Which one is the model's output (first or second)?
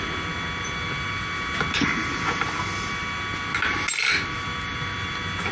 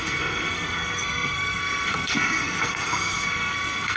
second